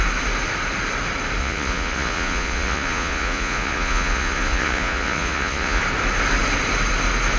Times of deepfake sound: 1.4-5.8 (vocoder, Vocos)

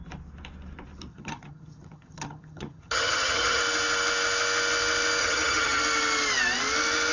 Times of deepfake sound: 1.1-3.6 (vocoder, HiFi-GAN); 5.2-5.8

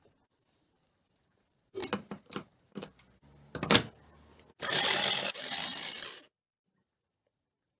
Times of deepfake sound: 0.0-1.8 (vocoder, BigVGAN v2); 5.3-5.7; 7.3-7.8

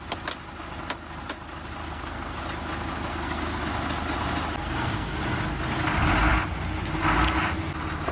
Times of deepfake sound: 1.8-2.4 (codec, SNAC); 3.1-3.6; 4.6-5.2

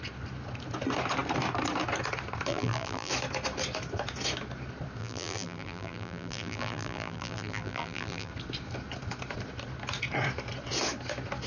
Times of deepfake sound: 2.5-3.1 (vocoder, BigVGAN v2); 5.0-8.3